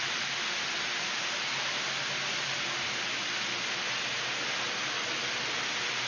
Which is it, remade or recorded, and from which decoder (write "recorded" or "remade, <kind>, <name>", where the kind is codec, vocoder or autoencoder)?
recorded